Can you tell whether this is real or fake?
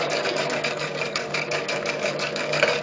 fake